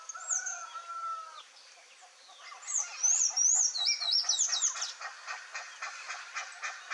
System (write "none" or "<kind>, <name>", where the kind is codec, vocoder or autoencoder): none